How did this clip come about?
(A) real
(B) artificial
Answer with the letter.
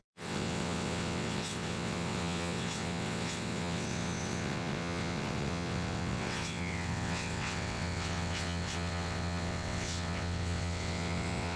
B